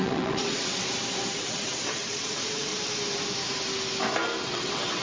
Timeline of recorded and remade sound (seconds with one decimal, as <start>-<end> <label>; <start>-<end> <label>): 0.0-0.8 remade; 0.8-1.3 recorded; 1.3-2.7 remade; 2.7-4.4 recorded; 4.4-5.0 remade